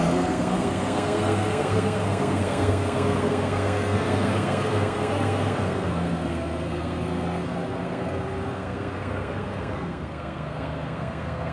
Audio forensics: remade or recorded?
remade